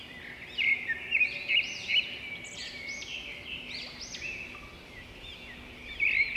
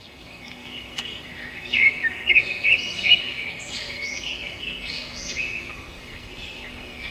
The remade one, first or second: second